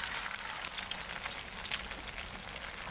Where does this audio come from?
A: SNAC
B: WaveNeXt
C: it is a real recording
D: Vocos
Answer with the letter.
C